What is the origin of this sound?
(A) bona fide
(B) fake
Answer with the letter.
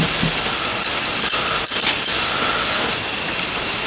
A